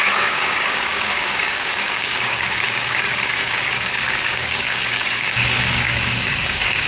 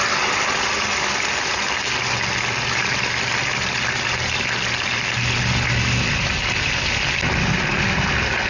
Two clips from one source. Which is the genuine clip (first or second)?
second